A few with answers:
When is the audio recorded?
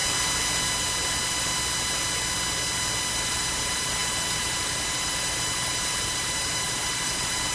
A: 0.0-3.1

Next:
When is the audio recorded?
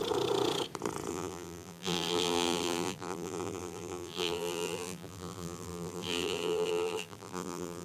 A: 0.0-1.1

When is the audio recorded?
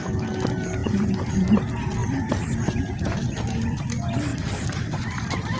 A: 0.0-2.0; 3.4-4.3